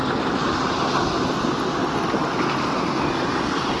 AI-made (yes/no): no